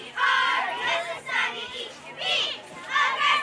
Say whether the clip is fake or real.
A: real